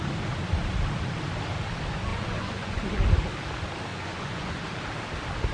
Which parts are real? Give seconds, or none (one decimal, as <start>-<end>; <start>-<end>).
0.0-2.1; 2.8-3.9; 4.6-5.5